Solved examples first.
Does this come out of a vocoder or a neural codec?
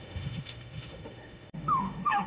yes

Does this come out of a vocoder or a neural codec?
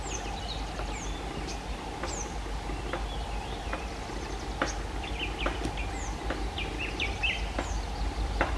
no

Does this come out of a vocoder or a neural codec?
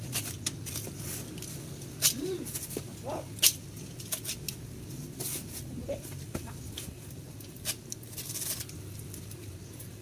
no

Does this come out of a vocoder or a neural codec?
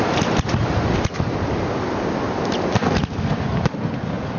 no